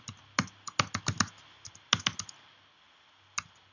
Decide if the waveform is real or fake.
real